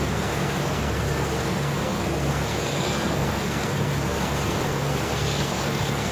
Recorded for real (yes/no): no